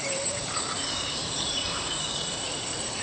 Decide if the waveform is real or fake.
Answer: fake